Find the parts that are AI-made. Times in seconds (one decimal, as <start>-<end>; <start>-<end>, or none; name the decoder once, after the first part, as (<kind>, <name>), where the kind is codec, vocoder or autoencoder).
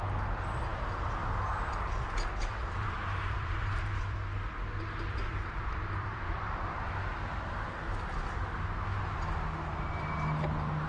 2.6-4.0 (vocoder, BigVGAN v2); 5.3-7.0